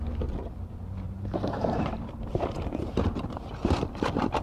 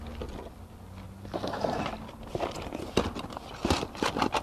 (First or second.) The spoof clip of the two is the first